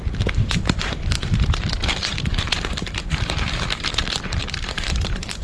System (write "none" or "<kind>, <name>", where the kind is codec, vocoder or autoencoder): vocoder, BigVGAN v2